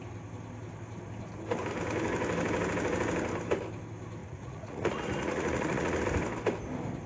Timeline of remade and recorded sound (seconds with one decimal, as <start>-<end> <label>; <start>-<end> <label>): 0.0-4.2 recorded; 4.2-6.0 remade; 6.0-7.1 recorded